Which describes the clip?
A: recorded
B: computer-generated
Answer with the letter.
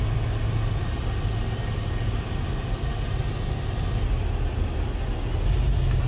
A